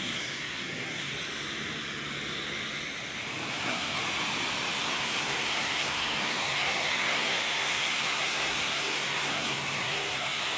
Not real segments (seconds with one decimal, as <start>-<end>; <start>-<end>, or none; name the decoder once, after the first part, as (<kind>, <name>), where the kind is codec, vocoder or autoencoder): 0.0-1.1 (codec, SNAC); 3.5-4.0; 4.8-10.6